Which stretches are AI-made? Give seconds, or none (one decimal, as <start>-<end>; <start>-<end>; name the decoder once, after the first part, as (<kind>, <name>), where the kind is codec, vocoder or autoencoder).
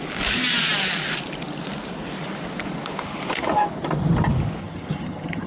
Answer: 4.6-5.5 (vocoder, HiFi-GAN)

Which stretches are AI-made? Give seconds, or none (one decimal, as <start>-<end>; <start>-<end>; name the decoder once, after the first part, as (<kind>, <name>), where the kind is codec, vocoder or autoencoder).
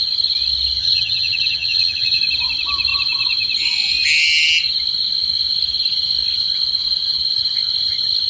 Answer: 0.8-2.2 (vocoder, HiFi-GAN)